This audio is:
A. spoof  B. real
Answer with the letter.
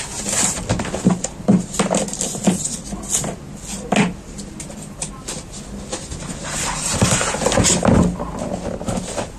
B